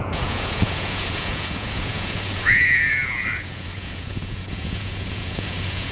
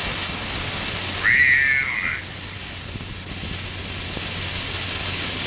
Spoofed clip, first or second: first